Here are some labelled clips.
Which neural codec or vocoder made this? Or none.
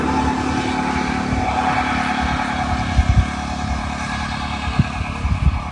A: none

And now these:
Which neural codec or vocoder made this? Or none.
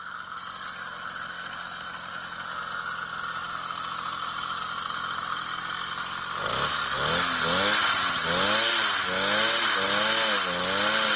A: none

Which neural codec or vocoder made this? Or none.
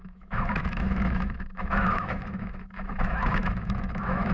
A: autoencoder, DAC-VAE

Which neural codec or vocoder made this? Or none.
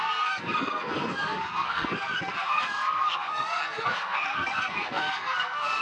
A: codec, SNAC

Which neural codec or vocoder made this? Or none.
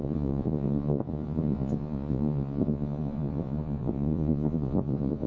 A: vocoder, Vocos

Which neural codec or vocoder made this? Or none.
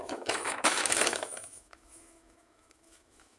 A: autoencoder, DAC-VAE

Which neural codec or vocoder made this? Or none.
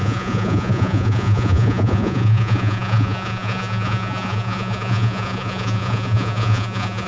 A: vocoder, Vocos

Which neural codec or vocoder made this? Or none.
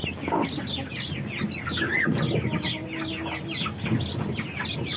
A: none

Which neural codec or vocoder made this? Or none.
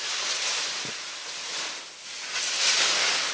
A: none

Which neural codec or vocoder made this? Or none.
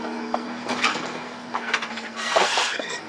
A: codec, SNAC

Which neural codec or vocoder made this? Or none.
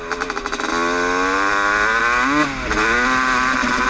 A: none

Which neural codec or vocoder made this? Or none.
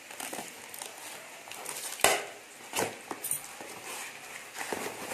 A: none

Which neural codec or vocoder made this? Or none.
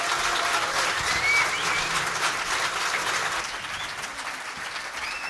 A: none